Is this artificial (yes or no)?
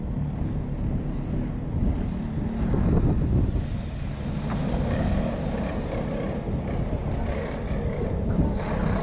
no